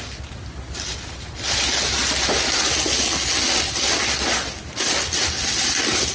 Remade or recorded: recorded